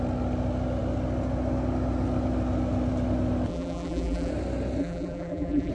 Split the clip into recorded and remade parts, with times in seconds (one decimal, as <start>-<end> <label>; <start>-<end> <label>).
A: 0.0-3.5 recorded; 3.5-4.3 remade; 4.3-4.8 recorded; 4.8-5.7 remade